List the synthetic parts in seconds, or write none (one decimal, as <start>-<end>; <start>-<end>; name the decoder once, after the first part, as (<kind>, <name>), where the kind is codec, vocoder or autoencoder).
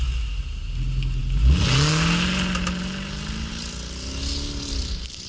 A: none